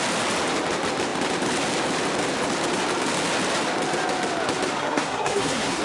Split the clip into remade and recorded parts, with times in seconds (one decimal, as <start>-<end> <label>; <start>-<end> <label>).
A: 0.0-4.8 recorded; 4.8-5.8 remade